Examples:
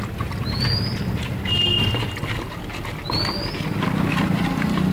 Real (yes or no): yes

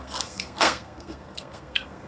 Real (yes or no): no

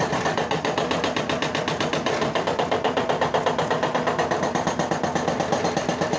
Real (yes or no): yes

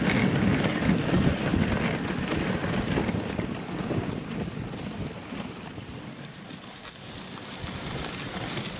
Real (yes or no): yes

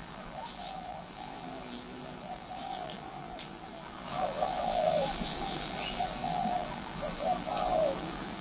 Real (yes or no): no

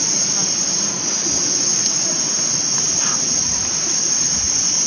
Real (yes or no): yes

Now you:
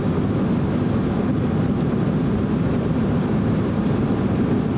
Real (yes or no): yes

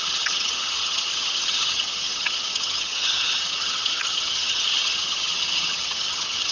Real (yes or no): no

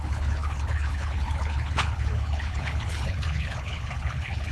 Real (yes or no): no